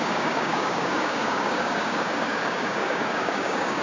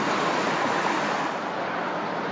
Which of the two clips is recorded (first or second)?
second